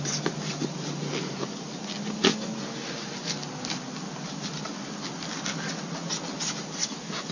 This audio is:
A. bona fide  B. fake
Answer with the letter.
A